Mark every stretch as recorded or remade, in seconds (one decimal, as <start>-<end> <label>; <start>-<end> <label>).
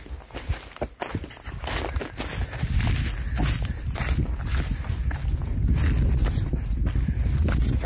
0.0-7.9 recorded